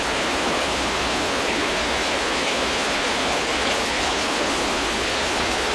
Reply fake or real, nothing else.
fake